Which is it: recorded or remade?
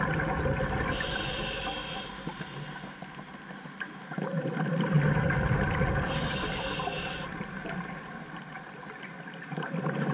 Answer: recorded